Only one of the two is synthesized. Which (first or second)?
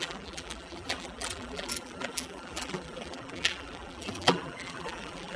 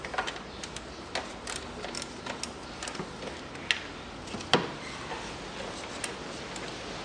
first